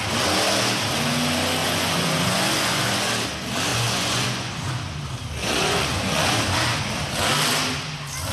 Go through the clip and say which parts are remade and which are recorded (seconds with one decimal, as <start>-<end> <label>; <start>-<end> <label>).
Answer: 0.0-1.6 recorded; 1.6-3.1 remade; 3.1-3.7 recorded; 3.7-4.7 remade; 4.7-5.4 recorded; 5.4-6.4 remade; 6.4-8.3 recorded